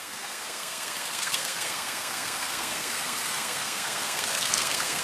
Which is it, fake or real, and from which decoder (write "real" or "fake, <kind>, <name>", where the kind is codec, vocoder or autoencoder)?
fake, codec, SNAC